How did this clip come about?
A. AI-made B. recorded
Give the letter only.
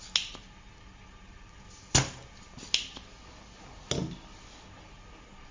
B